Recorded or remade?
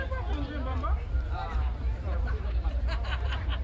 remade